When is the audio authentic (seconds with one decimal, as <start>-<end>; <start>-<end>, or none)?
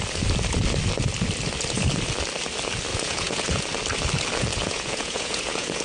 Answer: 0.0-2.9; 3.6-4.6